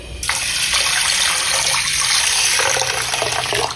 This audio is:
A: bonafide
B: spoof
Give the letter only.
A